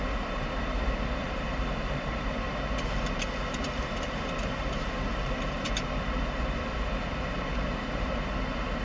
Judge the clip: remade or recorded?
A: remade